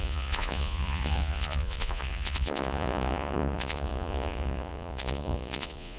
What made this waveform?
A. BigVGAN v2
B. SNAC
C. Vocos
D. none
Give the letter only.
C